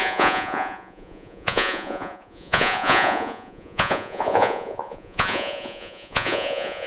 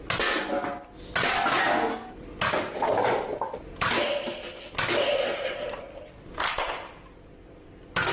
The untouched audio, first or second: second